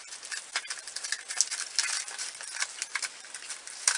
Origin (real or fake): real